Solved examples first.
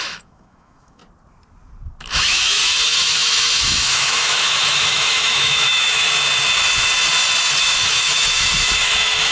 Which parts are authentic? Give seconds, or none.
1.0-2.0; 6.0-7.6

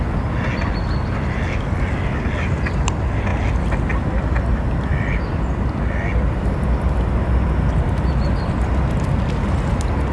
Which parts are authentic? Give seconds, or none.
0.0-10.1

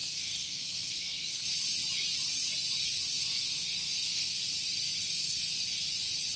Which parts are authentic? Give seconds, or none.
1.4-3.2; 4.4-5.0; 5.6-6.4

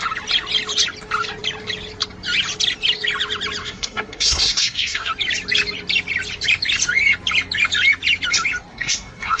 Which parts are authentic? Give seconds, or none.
0.0-3.6; 5.1-8.7

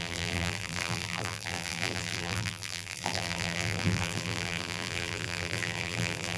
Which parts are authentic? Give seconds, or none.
none

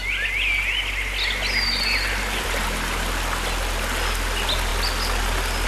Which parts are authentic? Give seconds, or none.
0.0-5.7